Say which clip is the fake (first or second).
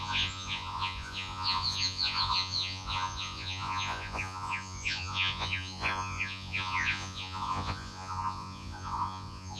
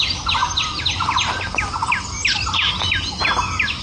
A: first